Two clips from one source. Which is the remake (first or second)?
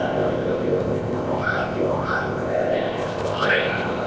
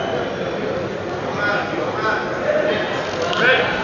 first